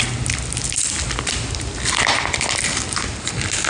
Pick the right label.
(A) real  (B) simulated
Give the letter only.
A